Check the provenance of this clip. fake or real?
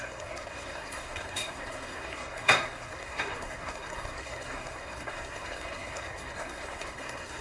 fake